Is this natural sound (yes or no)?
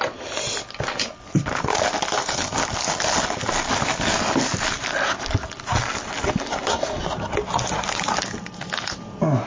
yes